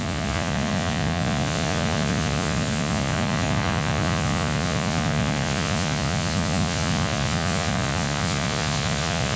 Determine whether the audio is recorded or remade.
remade